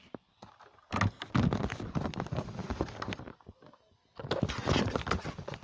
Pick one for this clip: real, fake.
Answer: real